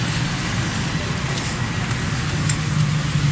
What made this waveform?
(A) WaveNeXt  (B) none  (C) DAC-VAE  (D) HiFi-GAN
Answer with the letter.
B